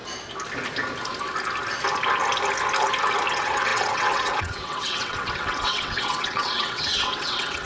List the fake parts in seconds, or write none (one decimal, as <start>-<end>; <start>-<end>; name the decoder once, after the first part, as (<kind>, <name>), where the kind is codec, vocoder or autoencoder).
3.3-7.7 (vocoder, WaveNeXt)